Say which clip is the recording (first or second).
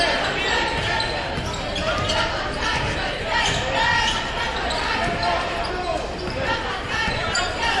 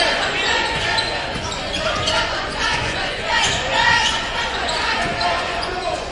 first